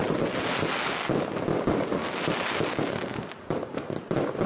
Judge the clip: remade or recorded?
recorded